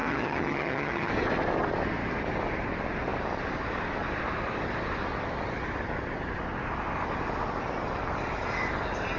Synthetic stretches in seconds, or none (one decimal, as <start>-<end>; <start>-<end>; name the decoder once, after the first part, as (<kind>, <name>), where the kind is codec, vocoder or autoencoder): 0.0-1.1 (vocoder, HiFi-GAN)